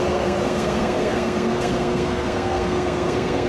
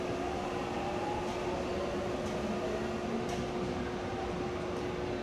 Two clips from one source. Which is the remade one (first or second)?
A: first